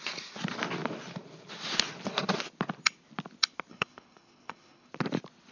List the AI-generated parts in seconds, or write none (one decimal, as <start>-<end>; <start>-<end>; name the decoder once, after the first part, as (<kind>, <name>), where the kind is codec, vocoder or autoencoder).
3.7-4.9 (codec, HILCodec)